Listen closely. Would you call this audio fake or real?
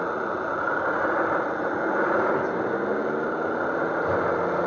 real